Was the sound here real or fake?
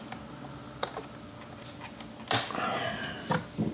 real